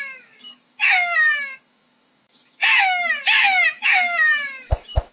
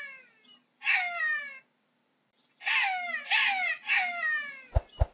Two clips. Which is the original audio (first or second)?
second